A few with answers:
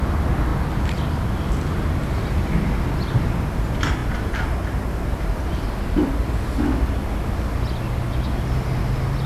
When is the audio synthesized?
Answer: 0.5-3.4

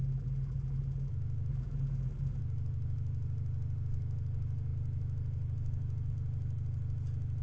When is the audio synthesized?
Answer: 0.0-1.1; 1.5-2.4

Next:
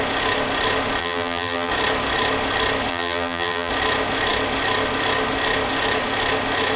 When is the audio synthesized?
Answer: 1.0-1.7; 2.9-3.7